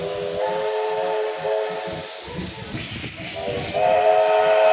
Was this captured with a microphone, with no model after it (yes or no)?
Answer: yes